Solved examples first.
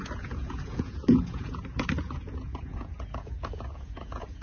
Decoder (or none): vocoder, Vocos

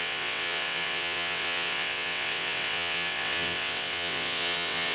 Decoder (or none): vocoder, WaveNeXt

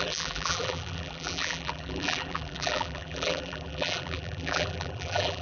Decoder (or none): vocoder, BigVGAN v2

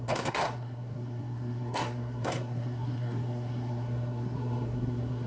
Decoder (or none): codec, SNAC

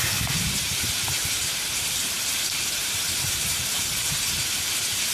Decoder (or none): vocoder, BigVGAN v2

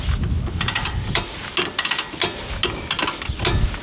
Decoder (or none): none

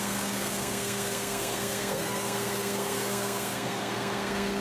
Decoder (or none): codec, SNAC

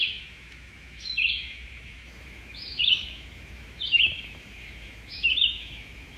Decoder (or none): autoencoder, DAC-VAE